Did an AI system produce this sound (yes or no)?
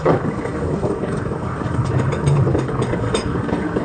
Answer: yes